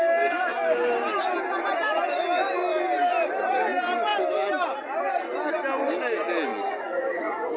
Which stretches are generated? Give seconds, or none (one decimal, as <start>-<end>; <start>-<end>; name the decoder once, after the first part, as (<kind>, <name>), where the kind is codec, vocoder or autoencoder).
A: 6.5-7.6 (vocoder, Vocos)